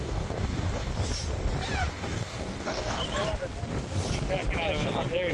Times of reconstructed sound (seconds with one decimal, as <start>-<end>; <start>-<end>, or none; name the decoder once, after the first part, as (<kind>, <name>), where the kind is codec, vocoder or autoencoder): 0.0-0.9 (codec, DAC); 1.9-3.0